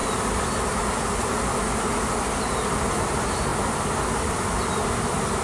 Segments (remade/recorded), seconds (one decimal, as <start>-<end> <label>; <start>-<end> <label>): 0.0-5.4 recorded